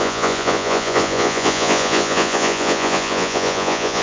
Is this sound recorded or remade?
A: remade